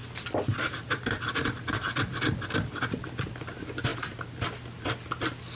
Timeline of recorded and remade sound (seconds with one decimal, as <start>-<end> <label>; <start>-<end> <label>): 0.0-5.5 recorded

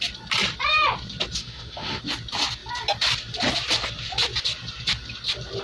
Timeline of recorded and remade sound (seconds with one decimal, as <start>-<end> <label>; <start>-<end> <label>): 0.0-1.4 recorded; 1.4-2.0 remade; 2.0-5.6 recorded

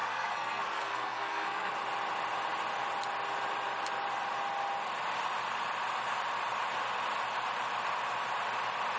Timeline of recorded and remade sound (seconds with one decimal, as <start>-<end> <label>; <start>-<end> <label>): 0.0-1.7 remade; 1.7-9.0 recorded

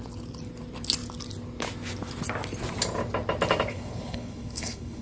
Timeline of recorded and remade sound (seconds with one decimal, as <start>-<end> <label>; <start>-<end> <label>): 0.0-3.7 recorded; 3.7-5.0 remade